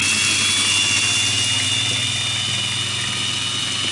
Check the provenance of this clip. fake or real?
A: real